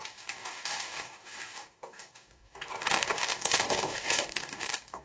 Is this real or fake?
fake